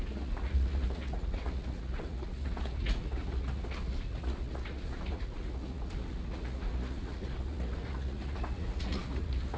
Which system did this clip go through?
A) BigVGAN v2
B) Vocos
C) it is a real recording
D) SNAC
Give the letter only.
B